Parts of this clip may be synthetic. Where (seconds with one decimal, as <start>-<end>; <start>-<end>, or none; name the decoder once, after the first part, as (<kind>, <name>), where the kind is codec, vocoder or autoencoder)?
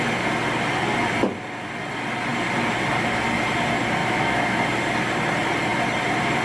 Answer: 4.0-4.6 (autoencoder, DAC-VAE)